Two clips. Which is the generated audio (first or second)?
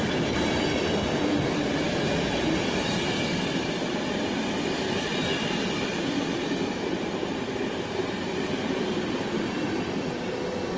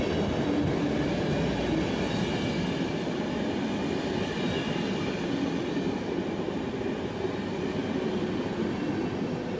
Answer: first